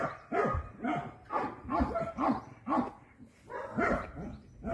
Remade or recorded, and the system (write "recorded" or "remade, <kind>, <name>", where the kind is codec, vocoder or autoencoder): recorded